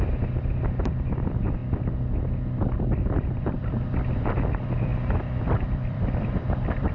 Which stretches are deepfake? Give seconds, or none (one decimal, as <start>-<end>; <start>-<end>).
0.0-1.6; 3.1-6.9